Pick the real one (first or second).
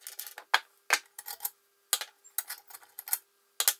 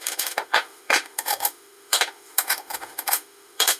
first